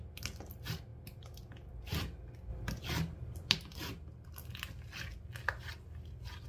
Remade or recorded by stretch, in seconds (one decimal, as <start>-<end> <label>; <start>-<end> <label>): 0.0-2.5 recorded; 2.5-3.5 remade; 3.5-6.5 recorded